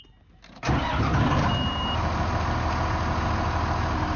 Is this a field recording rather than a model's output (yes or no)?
yes